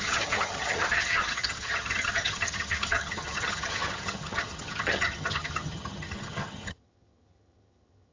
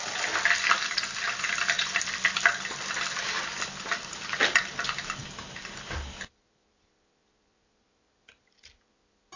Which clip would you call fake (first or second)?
first